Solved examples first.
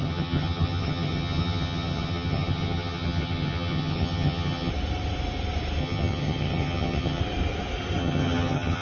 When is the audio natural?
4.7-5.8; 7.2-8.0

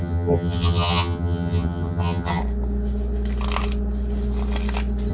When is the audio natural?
2.4-5.1

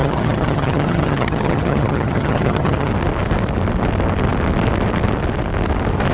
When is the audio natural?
2.9-6.1